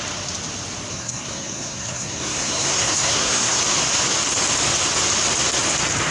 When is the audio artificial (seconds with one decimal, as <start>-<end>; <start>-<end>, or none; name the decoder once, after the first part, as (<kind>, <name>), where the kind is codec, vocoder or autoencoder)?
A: 0.9-3.6 (codec, SNAC)